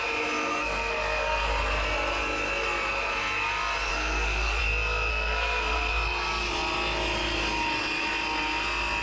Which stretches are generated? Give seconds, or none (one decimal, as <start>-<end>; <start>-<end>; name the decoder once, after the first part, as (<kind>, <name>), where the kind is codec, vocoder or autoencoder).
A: 0.5-1.5 (codec, SNAC); 3.9-4.6; 5.1-5.9